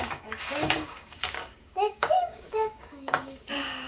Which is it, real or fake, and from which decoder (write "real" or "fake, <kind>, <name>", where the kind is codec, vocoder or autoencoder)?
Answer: fake, codec, DAC